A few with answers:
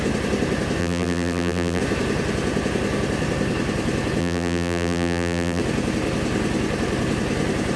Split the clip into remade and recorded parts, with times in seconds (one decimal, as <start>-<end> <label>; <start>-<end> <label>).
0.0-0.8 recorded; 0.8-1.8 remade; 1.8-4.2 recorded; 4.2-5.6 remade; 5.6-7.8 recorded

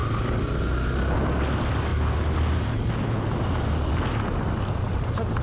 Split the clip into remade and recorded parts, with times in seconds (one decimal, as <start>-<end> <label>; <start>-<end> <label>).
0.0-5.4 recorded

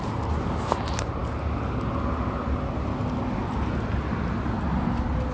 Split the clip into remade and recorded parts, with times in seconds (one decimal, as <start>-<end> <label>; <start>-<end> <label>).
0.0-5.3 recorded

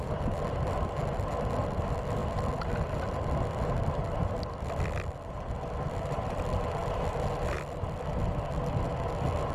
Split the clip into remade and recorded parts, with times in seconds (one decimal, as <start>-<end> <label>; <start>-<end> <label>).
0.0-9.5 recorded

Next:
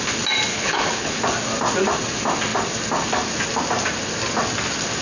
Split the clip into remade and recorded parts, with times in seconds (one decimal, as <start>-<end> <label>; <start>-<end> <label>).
0.0-0.5 recorded; 0.5-1.1 remade; 1.1-5.0 recorded

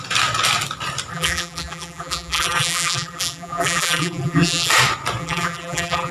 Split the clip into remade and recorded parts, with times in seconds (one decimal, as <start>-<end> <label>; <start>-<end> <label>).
0.0-1.1 recorded; 1.1-4.7 remade; 4.7-5.2 recorded; 5.2-6.1 remade

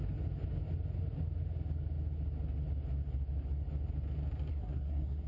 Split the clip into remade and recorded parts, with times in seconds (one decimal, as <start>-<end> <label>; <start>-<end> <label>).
0.0-4.5 recorded; 4.5-5.3 remade

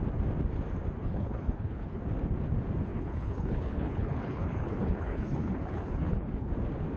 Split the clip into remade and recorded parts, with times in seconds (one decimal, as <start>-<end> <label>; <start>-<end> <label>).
0.0-1.0 recorded; 1.0-2.0 remade; 2.0-2.9 recorded; 2.9-6.5 remade; 6.5-7.0 recorded